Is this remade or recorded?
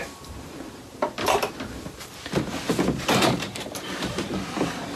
remade